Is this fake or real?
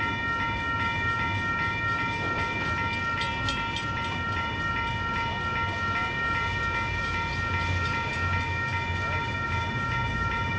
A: real